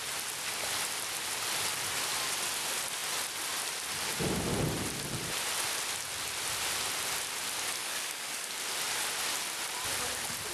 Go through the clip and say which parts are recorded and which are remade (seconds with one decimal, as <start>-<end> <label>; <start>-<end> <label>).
0.0-7.8 recorded; 7.8-8.5 remade; 8.5-10.5 recorded